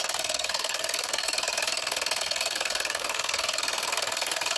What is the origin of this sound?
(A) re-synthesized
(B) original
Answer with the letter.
A